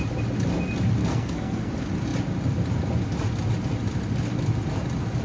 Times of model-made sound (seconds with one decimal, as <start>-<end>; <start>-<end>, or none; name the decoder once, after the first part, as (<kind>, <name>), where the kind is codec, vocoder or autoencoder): 1.0-1.7 (codec, SNAC)